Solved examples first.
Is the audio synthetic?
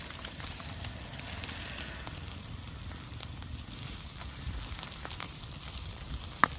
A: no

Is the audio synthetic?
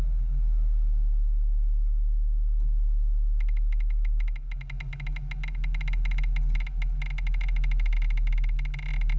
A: no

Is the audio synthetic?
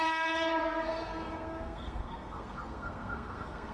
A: yes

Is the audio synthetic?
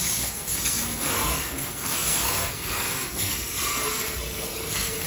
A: yes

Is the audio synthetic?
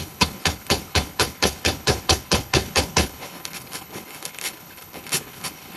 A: yes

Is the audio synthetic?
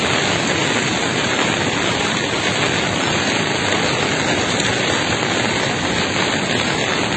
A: no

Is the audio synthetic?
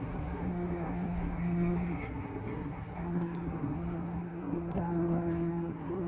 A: yes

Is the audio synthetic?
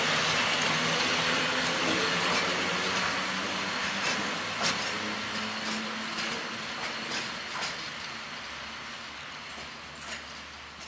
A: no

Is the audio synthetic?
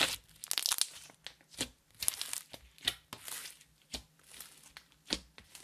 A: no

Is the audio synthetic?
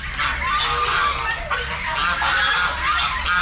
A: no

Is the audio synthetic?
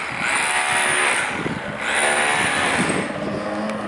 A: no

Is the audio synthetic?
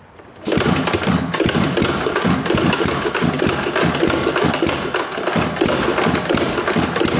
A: no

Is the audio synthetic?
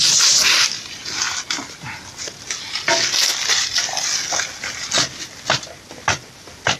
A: no